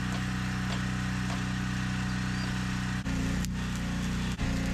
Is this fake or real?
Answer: real